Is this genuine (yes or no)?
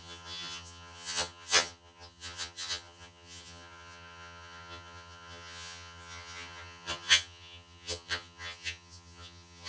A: no